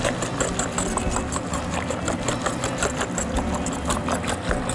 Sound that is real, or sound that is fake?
real